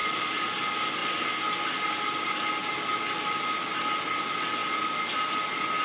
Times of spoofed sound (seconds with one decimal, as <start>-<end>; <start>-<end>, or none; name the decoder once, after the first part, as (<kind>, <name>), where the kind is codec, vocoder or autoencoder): 0.0-0.6 (vocoder, BigVGAN v2)